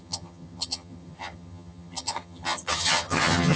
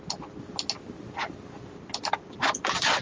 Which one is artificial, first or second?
first